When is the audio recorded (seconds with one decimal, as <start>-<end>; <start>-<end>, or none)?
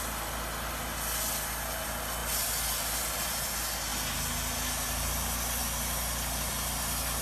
0.0-7.2